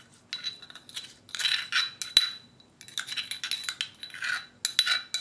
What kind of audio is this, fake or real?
real